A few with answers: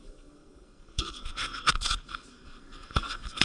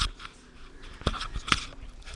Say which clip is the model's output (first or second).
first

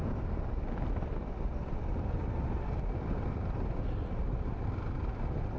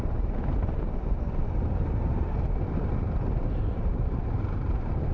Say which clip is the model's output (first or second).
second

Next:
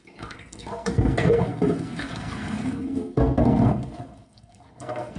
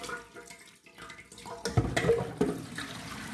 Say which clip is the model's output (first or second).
first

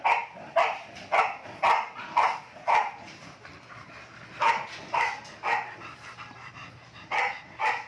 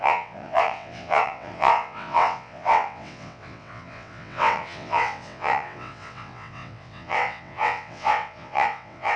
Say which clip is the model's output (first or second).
second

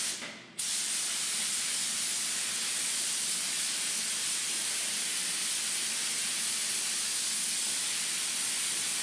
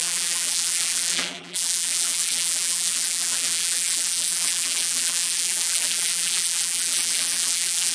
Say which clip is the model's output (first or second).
second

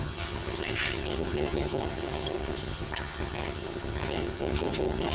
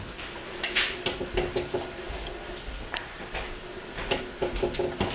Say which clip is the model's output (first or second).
first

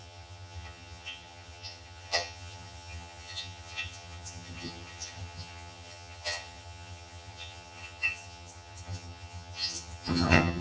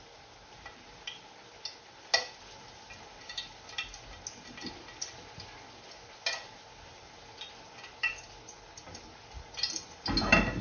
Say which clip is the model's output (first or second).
first